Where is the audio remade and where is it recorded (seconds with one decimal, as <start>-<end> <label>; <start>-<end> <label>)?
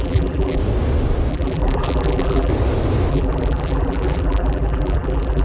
0.0-0.6 remade; 0.6-1.3 recorded; 1.3-2.5 remade; 2.5-3.1 recorded; 3.1-5.4 remade